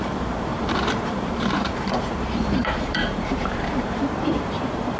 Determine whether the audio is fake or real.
fake